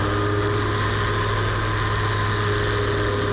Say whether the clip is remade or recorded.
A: recorded